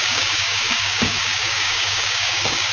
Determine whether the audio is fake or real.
fake